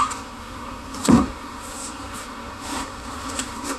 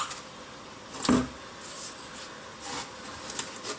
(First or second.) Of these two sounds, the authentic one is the second